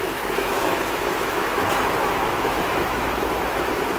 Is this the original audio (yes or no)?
no